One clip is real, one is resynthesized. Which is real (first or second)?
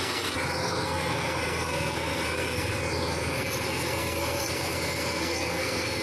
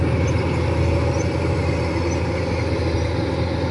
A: second